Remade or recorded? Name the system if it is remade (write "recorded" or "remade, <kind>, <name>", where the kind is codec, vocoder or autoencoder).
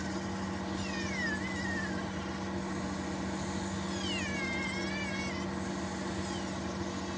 recorded